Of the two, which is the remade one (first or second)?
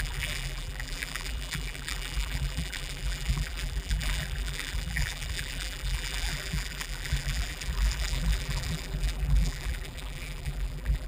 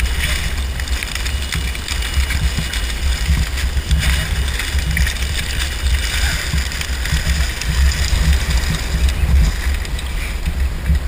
first